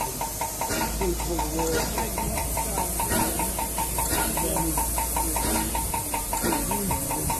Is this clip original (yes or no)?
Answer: yes